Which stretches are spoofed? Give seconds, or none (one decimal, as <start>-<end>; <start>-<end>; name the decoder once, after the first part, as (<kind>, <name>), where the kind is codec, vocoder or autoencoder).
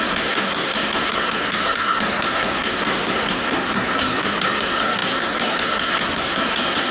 0.0-6.9 (codec, SNAC)